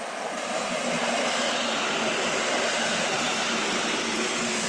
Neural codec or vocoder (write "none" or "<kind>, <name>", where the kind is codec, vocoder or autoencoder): none